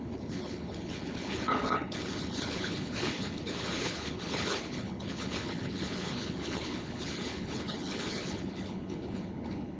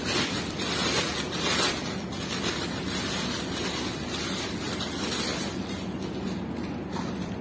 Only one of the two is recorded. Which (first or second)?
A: second